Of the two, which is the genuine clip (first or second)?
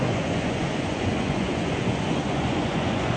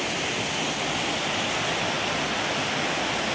second